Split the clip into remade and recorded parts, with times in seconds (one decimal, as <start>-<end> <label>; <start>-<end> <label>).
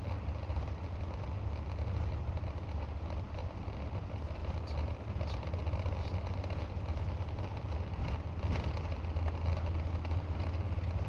0.0-11.1 recorded